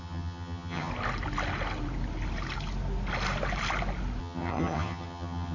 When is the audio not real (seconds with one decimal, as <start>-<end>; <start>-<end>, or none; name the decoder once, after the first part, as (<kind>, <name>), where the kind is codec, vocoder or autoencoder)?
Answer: 0.0-0.9 (vocoder, HiFi-GAN); 4.2-5.5